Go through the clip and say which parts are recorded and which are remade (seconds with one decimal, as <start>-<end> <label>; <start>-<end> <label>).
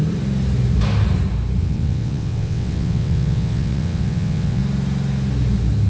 0.0-1.6 recorded; 1.6-4.6 remade; 4.6-5.9 recorded